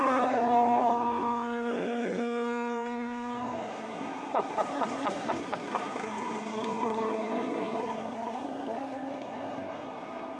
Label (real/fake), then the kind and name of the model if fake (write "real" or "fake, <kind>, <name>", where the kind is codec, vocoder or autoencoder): fake, codec, SNAC